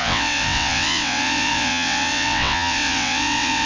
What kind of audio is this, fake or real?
fake